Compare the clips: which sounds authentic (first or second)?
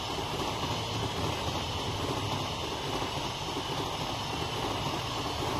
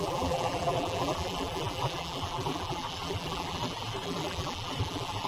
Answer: first